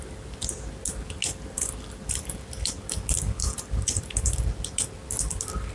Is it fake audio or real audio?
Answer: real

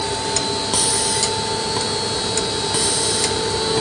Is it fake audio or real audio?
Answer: real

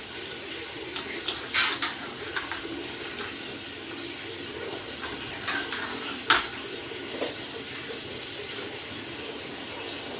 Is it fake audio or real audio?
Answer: fake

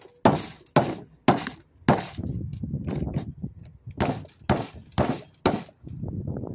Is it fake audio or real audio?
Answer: real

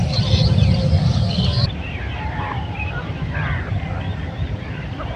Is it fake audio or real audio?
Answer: fake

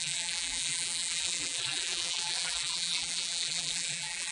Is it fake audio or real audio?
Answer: fake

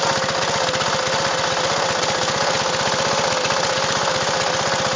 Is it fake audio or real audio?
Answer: real